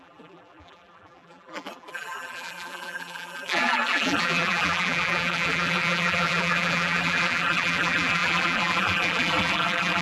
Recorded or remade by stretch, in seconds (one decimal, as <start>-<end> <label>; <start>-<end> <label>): 0.0-10.0 remade